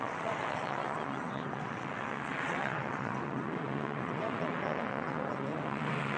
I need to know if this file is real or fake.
fake